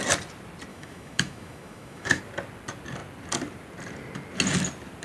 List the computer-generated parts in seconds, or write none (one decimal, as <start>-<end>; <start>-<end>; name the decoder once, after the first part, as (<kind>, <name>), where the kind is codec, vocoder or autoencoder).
0.7-2.2 (autoencoder, DAC-VAE)